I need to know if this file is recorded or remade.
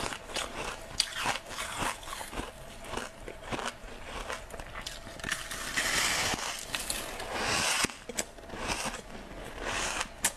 recorded